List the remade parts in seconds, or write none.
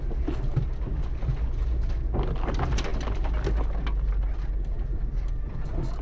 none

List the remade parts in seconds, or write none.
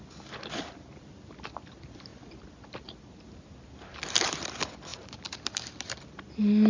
none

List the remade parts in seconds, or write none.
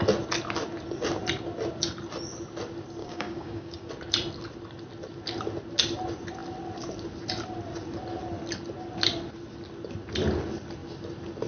3.0-3.9 (codec, DAC)